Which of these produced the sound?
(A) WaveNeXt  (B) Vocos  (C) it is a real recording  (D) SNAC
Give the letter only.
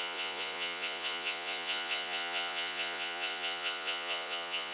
B